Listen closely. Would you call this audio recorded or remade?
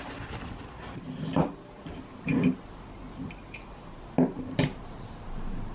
recorded